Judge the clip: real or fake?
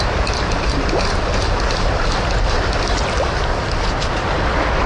real